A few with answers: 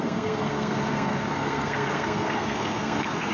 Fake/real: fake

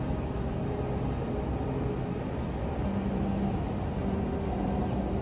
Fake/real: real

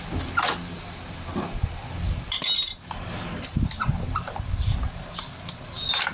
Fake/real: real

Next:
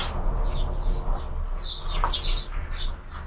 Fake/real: real